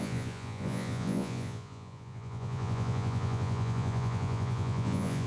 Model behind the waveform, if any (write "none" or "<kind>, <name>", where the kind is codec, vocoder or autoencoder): vocoder, Vocos